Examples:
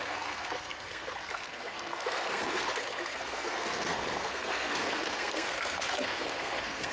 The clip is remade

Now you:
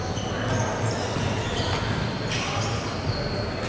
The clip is recorded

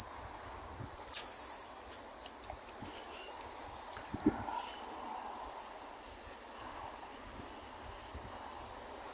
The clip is recorded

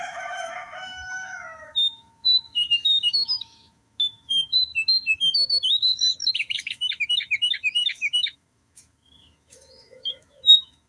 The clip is remade